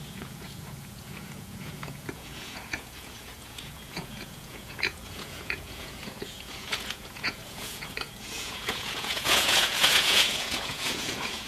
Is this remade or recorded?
remade